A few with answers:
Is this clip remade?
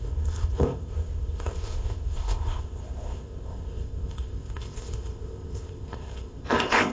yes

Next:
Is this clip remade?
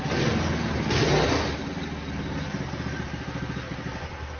no